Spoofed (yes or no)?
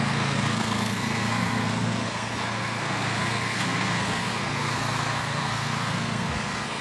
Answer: yes